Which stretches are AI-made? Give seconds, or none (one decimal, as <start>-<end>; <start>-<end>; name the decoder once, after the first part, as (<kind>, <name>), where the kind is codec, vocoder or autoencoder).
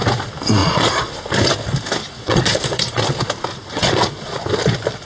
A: 0.6-1.1 (vocoder, Vocos); 2.0-3.0; 3.5-4.4